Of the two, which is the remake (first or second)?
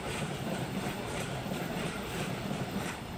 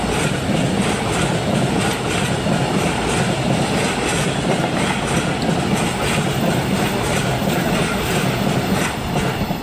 first